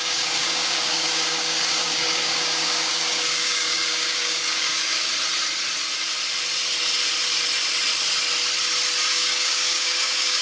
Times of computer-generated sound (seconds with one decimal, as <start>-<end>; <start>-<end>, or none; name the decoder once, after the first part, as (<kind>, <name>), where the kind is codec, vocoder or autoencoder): 0.0-5.1 (codec, DAC); 9.1-10.4